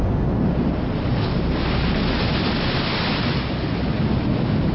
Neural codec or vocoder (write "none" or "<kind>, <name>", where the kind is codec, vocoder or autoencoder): none